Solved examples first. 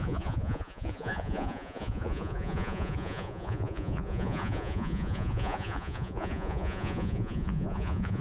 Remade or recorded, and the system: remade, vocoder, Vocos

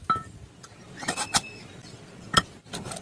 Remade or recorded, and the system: recorded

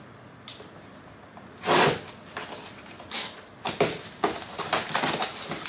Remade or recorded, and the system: recorded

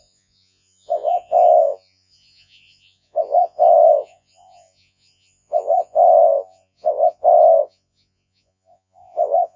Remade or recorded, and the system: remade, vocoder, Vocos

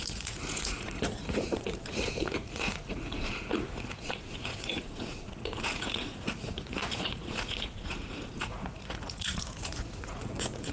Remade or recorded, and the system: remade, vocoder, Vocos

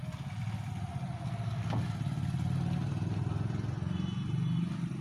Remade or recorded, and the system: recorded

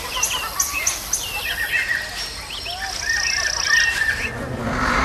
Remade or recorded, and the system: recorded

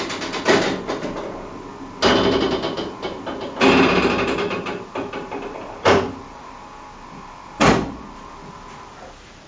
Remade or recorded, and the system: recorded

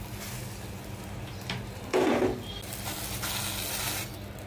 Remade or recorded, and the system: recorded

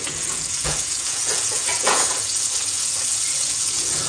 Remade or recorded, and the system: remade, vocoder, Vocos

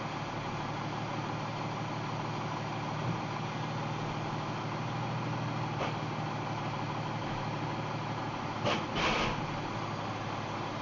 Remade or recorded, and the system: recorded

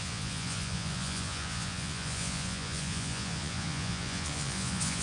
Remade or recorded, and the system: remade, vocoder, Vocos